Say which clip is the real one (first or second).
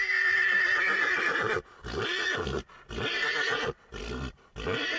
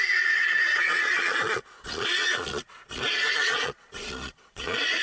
first